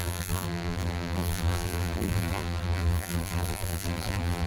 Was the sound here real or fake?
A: fake